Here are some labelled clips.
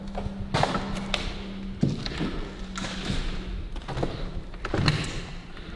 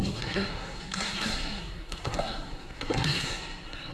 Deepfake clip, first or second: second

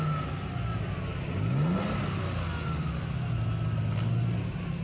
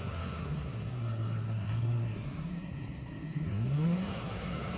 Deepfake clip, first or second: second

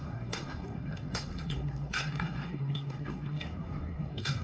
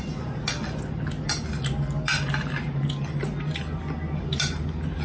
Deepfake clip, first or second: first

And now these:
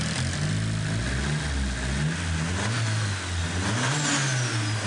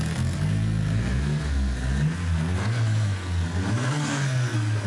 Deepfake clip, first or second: second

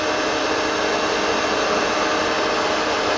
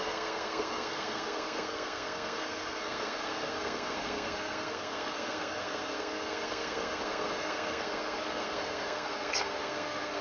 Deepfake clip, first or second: second